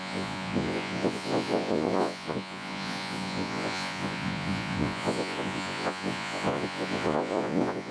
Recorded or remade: remade